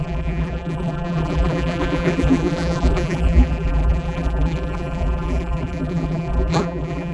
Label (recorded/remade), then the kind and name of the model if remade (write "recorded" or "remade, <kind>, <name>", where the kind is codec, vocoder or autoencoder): remade, vocoder, BigVGAN v2